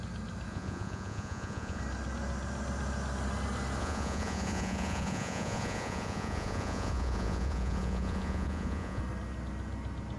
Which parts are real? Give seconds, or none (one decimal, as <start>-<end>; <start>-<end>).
0.0-0.5; 1.8-3.8; 9.0-10.2